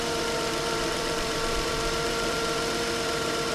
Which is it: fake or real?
fake